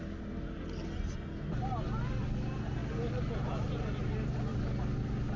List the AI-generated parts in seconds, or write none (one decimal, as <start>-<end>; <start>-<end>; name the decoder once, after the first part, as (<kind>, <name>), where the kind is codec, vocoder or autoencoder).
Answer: none